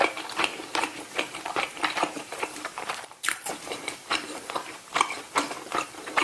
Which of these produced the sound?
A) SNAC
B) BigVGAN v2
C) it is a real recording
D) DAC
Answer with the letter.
B